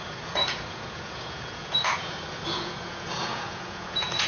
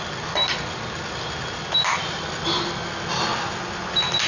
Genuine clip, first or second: second